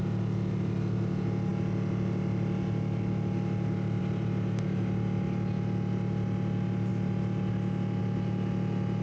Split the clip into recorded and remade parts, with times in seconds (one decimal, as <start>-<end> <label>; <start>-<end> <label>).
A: 0.0-9.0 recorded